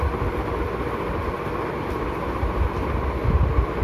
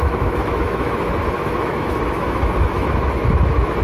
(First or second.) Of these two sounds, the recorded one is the first